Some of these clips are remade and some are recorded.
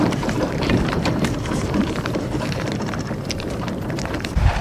remade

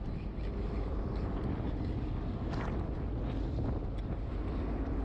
recorded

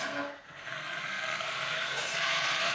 remade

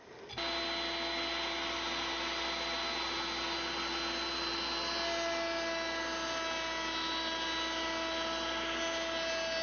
recorded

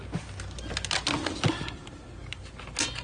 recorded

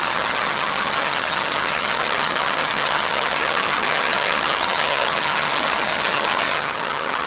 remade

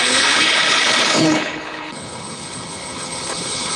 remade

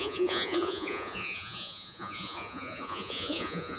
remade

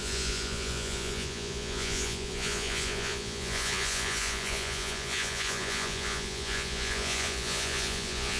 remade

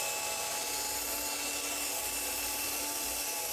recorded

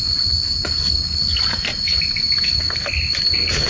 recorded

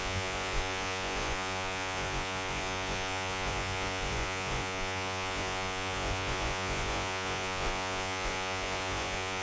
remade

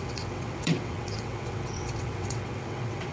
remade